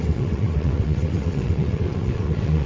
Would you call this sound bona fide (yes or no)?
no